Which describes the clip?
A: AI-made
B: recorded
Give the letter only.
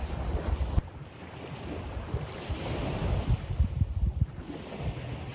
B